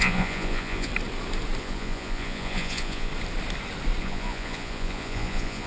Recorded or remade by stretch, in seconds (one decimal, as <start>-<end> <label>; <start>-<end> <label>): 0.0-0.9 remade; 0.9-1.6 recorded; 1.6-3.1 remade; 3.1-4.0 recorded; 4.0-5.7 remade